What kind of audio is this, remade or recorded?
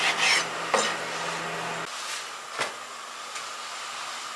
recorded